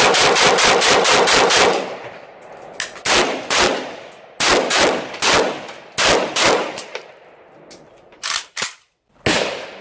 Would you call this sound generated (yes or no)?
no